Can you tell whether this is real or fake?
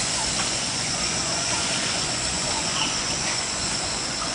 fake